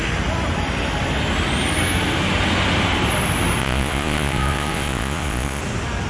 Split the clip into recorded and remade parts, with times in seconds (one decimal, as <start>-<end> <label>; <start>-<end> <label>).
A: 0.0-3.6 recorded; 3.6-5.6 remade; 5.6-6.1 recorded